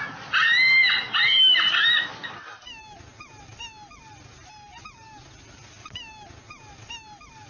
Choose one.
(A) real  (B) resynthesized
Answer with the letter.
A